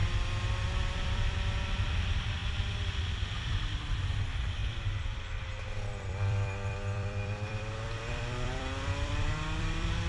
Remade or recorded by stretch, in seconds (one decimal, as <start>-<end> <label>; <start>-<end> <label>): 0.0-1.0 recorded; 1.0-2.4 remade; 2.4-3.4 recorded; 3.4-4.6 remade; 4.6-5.9 recorded; 5.9-10.1 remade